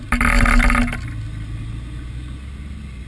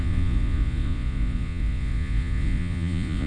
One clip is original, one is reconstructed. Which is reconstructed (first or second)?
second